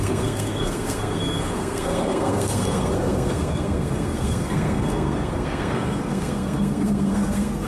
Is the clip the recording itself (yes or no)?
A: no